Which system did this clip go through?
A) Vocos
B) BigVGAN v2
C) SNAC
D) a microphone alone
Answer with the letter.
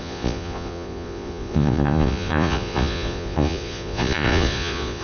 A